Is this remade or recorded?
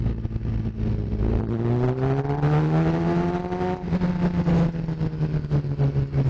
recorded